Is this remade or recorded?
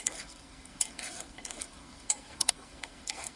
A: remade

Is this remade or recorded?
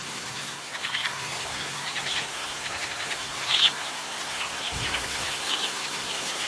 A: remade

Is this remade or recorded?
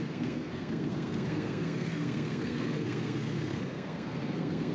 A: remade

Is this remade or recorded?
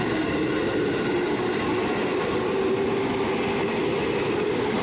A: recorded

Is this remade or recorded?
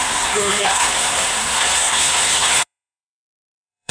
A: remade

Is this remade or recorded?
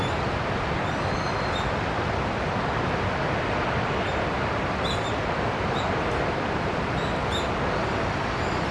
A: recorded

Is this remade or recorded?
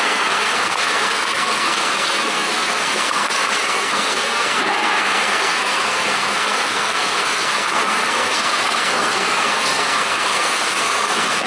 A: remade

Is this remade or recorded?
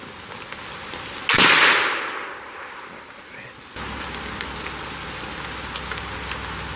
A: recorded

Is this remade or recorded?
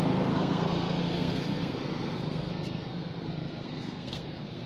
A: remade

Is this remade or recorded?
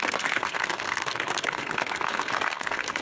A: remade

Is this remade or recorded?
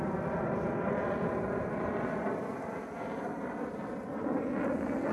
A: recorded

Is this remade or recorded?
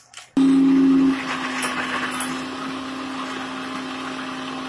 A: recorded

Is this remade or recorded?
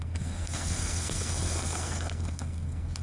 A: remade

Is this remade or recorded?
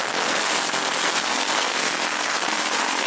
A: remade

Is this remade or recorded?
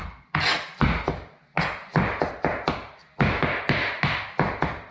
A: recorded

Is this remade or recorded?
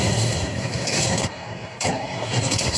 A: remade